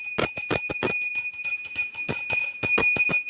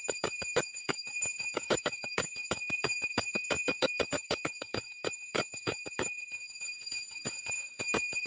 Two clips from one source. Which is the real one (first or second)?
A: first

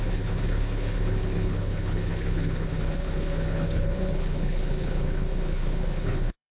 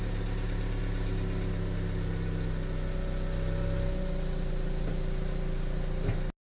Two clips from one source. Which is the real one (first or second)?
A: second